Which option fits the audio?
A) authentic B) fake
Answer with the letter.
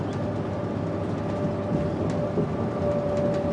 A